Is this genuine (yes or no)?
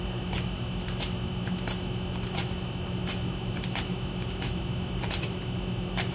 yes